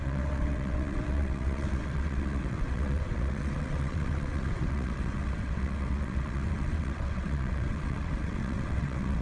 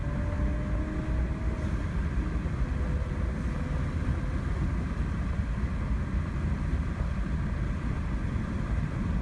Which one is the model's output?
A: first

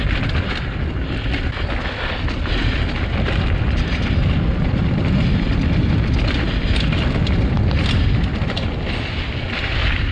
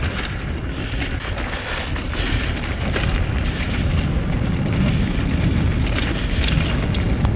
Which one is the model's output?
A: first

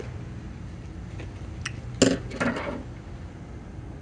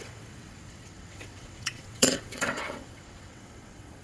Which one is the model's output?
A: second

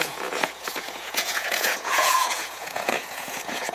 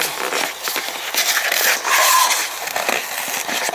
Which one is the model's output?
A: first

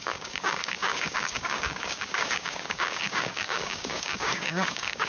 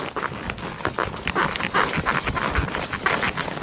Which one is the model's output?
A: first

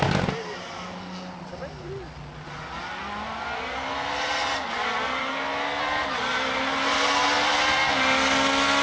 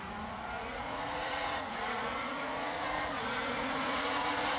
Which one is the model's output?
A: second